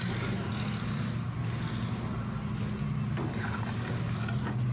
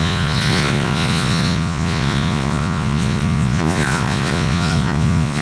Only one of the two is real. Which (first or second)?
first